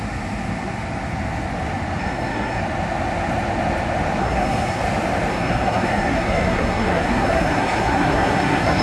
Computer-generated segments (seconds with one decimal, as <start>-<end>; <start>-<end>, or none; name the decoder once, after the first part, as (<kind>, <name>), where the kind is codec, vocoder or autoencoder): 2.0-2.6 (codec, SNAC); 4.2-4.8; 5.3-8.8